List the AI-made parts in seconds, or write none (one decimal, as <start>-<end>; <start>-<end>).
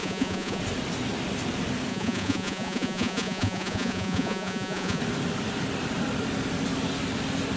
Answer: 0.0-0.6; 1.9-5.0